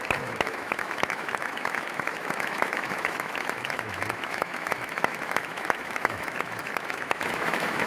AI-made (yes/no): yes